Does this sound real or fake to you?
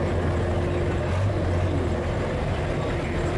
real